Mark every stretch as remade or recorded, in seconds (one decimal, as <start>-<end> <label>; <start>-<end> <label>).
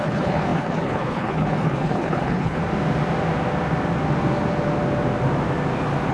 0.0-2.6 remade; 2.6-6.1 recorded